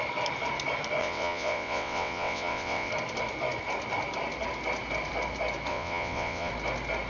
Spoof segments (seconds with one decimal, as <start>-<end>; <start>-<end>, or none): 1.0-2.9; 5.7-6.5

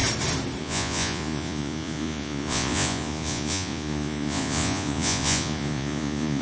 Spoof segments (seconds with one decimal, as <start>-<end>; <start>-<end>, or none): 0.6-6.4

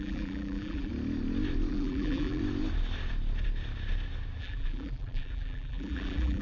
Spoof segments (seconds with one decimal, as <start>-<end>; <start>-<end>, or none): 0.0-0.9; 1.7-2.4; 4.4-6.4

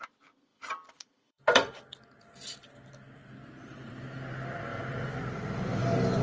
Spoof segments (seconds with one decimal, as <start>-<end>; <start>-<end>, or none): 0.5-4.2; 4.7-5.2

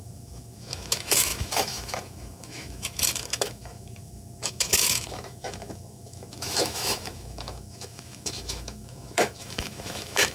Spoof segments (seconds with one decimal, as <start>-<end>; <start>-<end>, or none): 0.0-10.3

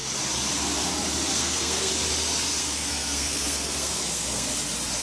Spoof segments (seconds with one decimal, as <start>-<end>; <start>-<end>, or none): 1.3-1.9; 2.6-4.5